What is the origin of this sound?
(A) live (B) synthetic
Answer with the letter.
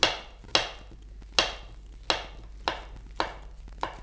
A